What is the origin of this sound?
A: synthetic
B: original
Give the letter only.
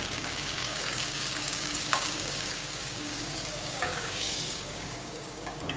A